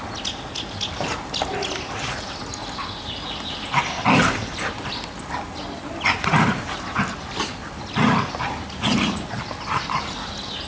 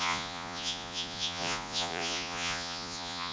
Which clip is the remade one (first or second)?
second